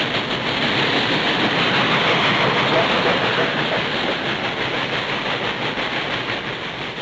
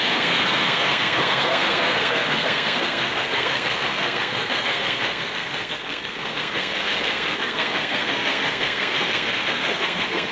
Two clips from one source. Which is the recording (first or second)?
first